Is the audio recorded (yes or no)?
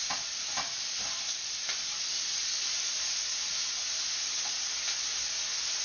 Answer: yes